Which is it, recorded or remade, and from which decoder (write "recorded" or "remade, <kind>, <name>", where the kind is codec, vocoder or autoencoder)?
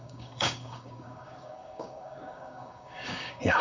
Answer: remade, codec, DAC